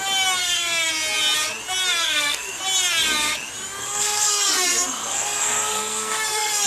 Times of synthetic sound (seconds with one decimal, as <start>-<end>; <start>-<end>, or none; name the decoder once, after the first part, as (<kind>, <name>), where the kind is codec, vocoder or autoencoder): 0.4-0.9 (codec, SNAC); 1.9-2.6; 3.8-6.7